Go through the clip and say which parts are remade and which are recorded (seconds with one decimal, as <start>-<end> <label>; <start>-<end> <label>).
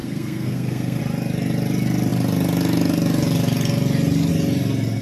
0.0-1.0 remade; 1.0-5.0 recorded